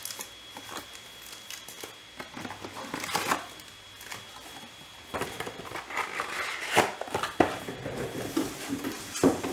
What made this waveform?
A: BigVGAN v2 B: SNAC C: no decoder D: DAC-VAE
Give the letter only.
C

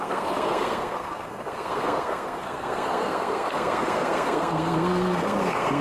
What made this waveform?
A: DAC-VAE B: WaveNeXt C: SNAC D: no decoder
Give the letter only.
C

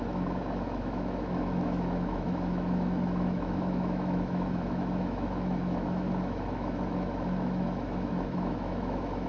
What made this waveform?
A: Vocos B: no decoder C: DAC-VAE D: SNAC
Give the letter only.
C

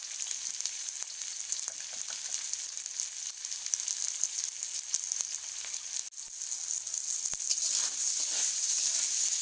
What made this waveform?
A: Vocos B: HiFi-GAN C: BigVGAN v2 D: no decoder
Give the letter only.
D